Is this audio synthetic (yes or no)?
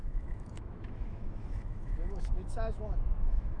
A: yes